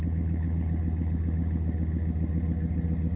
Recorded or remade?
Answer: recorded